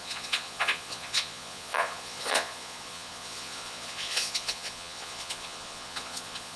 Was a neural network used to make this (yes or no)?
yes